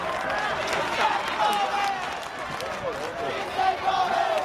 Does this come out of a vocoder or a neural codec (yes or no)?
no